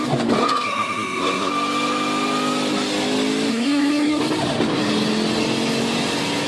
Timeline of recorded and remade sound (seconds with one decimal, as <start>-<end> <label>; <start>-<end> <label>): 0.0-0.4 recorded; 0.4-1.5 remade; 1.5-3.5 recorded; 3.5-4.2 remade; 4.2-6.5 recorded